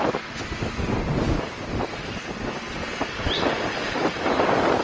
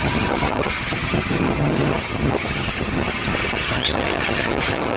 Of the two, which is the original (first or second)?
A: first